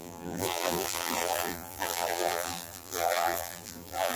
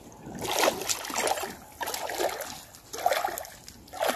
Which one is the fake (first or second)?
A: first